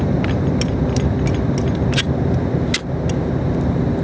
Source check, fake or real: real